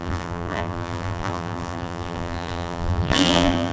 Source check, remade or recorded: remade